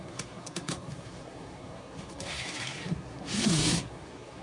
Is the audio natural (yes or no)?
no